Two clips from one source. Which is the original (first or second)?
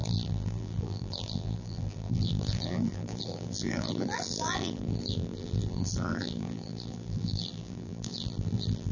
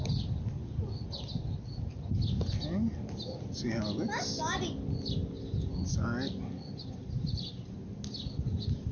second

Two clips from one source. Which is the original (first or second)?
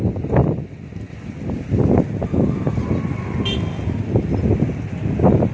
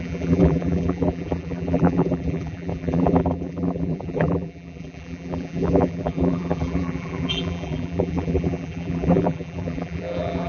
first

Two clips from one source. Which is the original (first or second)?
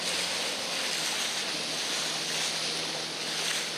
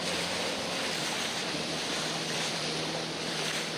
first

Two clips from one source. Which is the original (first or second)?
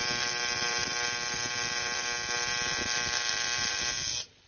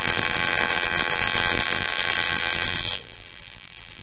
first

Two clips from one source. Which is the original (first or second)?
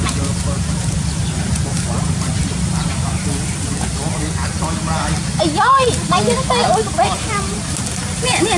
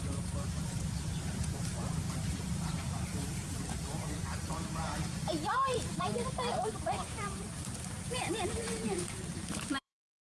first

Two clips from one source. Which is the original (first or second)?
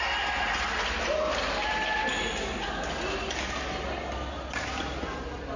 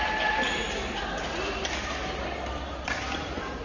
first